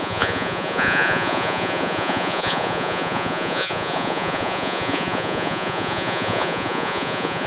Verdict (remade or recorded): remade